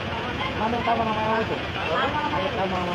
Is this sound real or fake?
fake